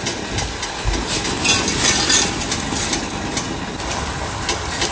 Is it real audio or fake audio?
real